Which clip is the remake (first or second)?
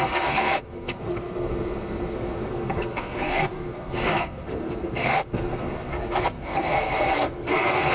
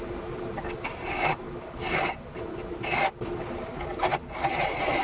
first